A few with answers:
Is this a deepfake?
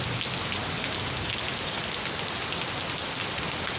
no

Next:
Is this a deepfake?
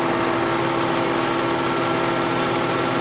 no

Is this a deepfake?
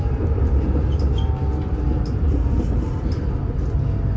no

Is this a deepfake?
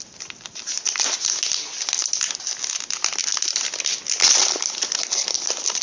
no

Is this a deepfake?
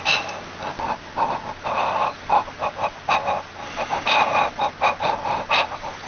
no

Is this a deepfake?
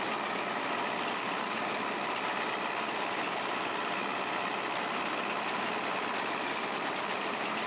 no